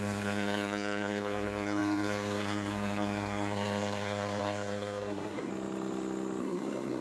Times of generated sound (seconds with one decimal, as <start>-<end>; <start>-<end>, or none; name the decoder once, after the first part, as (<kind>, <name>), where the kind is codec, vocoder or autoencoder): 0.0-5.5 (codec, SNAC); 6.4-7.0